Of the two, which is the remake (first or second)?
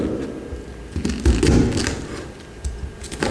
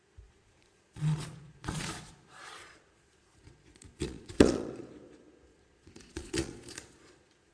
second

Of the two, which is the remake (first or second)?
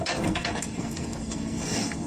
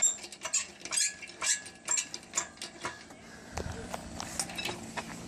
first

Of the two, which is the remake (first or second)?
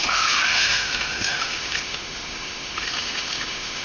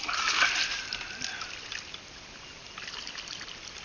first